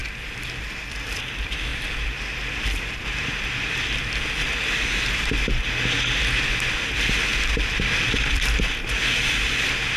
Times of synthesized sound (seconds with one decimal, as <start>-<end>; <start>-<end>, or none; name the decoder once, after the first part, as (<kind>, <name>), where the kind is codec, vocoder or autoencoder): 0.0-0.6 (vocoder, BigVGAN v2); 1.7-5.6; 7.3-8.6

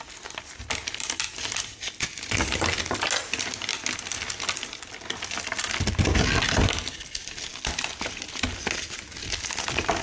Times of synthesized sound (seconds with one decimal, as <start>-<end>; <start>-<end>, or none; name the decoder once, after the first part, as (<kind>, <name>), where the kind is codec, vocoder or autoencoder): none